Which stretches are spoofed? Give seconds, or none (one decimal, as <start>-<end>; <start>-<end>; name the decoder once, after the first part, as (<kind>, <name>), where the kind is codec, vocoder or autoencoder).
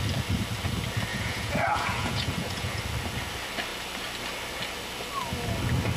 1.1-2.8 (vocoder, Vocos)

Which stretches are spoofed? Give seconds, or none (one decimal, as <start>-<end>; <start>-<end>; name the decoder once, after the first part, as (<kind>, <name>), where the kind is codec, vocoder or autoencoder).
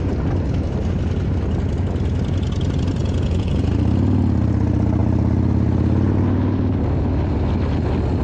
3.0-3.7 (vocoder, Vocos)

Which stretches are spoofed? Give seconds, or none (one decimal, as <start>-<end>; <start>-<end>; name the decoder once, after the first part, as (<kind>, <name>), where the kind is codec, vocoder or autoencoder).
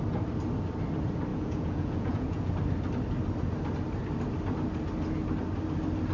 1.3-2.5 (vocoder, Vocos)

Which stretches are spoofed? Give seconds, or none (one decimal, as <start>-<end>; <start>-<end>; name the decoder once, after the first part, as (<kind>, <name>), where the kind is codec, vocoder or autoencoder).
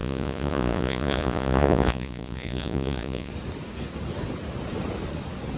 0.0-3.3 (vocoder, Vocos)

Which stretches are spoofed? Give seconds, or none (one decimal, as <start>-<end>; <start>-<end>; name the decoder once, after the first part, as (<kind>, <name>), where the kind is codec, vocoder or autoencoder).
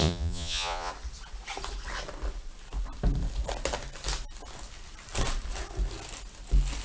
0.0-0.9 (vocoder, Vocos)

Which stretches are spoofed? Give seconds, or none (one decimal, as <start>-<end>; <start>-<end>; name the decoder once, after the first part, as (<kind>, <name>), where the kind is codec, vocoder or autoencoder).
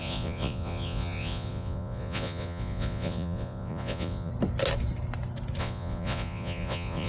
0.0-4.3 (vocoder, Vocos); 5.6-7.1